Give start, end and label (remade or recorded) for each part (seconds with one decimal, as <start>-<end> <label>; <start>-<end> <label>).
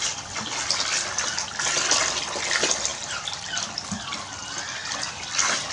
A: 0.0-2.9 recorded; 2.9-3.6 remade; 3.6-5.7 recorded